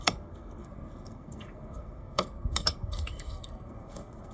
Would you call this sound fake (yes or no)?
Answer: yes